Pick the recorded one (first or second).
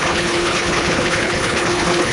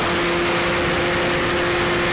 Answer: second